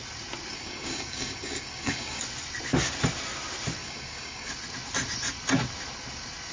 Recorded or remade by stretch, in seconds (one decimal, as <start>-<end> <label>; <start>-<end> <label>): 0.0-0.5 recorded; 0.5-2.2 remade; 2.2-3.8 recorded; 3.8-4.5 remade; 4.5-6.5 recorded